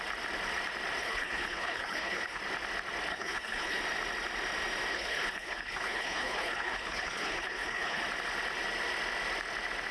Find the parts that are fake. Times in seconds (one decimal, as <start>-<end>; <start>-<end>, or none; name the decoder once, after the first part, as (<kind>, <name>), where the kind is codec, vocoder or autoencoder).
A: 1.0-2.4 (codec, HILCodec); 3.1-3.8; 4.9-8.0